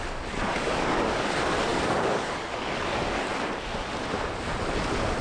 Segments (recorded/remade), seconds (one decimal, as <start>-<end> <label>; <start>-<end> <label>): 0.0-3.3 remade; 3.3-5.2 recorded